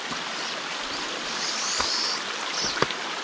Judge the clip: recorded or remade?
recorded